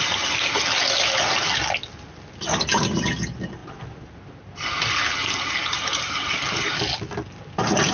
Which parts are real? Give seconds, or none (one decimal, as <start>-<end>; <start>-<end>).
0.0-7.9